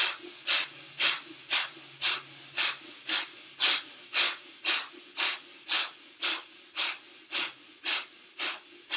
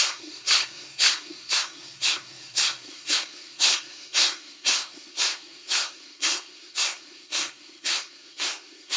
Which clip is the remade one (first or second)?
second